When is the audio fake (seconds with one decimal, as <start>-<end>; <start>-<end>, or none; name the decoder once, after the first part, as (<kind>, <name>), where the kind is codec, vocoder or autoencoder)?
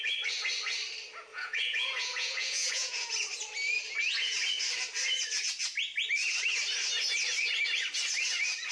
1.3-3.1 (vocoder, Vocos)